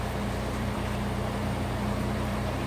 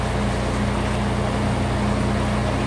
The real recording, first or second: second